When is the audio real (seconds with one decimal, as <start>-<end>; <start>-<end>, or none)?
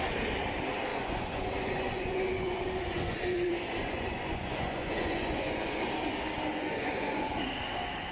0.0-0.9; 5.8-6.5; 7.3-8.1